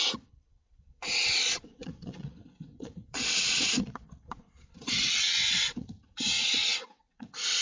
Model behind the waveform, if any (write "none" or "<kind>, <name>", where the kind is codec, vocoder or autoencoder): vocoder, WaveNeXt